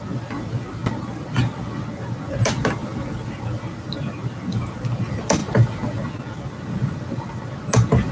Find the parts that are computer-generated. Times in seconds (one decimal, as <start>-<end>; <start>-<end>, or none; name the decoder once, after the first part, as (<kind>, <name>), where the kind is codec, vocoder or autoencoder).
none